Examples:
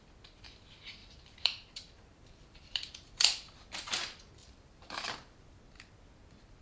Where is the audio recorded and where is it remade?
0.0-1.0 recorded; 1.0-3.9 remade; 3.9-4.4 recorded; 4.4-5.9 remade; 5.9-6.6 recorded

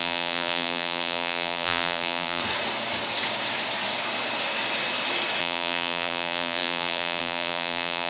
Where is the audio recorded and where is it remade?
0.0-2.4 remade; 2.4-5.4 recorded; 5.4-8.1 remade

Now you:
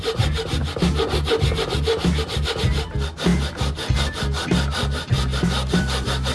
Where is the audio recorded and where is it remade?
0.0-3.3 recorded; 3.3-6.3 remade